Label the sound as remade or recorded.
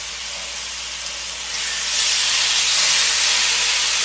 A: recorded